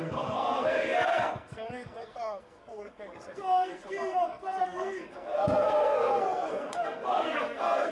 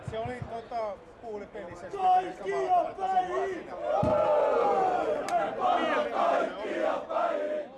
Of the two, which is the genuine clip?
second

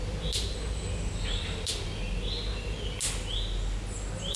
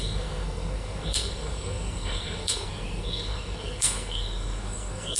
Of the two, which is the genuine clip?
first